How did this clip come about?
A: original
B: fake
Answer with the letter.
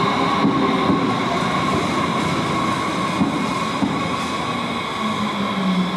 A